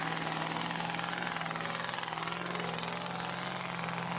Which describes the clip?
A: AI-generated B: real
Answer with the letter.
B